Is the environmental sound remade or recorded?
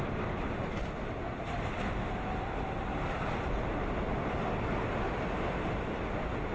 recorded